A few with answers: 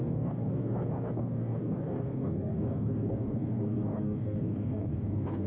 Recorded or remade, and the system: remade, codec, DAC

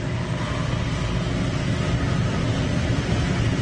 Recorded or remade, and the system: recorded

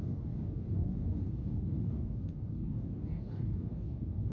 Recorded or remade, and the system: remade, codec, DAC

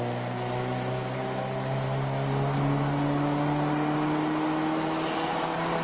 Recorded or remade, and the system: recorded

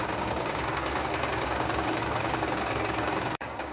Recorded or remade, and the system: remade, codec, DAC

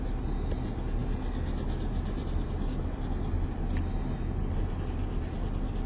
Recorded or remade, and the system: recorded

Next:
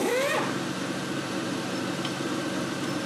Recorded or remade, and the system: recorded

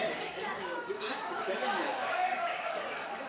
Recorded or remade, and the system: remade, codec, DAC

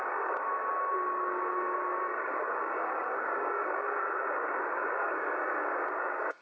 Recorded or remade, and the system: remade, codec, DAC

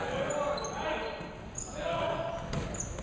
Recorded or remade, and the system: recorded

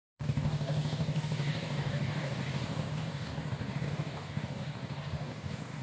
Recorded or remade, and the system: remade, codec, DAC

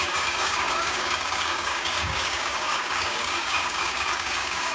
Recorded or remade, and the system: remade, codec, DAC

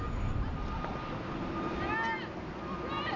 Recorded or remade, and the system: recorded